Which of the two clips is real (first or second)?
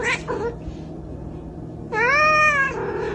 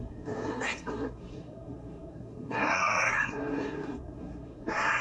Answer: first